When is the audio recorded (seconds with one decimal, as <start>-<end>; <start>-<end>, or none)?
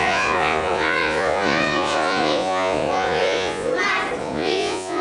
3.7-4.2